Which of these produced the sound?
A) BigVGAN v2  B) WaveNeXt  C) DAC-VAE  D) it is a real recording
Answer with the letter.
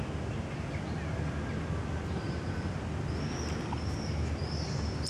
D